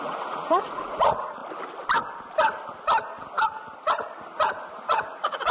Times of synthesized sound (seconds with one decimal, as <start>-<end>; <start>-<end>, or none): 0.0-1.4; 4.7-5.5